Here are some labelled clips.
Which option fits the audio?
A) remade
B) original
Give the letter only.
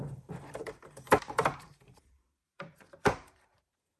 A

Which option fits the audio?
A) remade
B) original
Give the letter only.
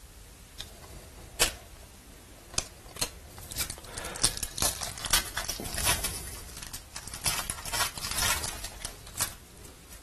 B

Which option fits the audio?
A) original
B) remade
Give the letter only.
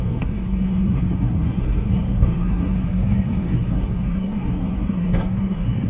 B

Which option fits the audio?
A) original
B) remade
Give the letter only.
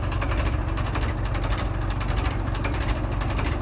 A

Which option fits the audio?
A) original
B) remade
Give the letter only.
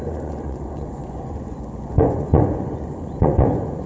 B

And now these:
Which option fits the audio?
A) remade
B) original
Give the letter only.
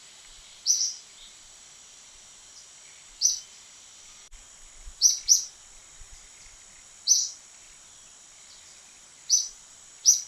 A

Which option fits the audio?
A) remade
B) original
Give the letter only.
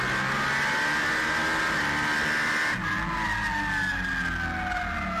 B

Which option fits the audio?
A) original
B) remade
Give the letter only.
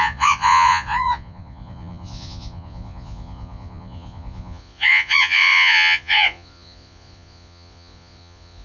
B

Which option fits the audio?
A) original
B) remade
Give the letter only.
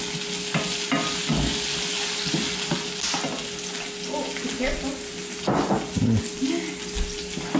A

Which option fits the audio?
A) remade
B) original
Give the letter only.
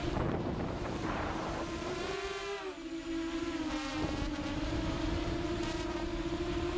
A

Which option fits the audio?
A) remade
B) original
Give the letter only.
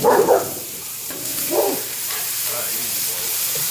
A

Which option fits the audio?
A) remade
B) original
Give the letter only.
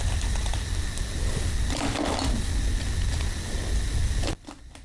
B